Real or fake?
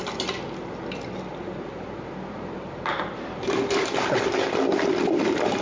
real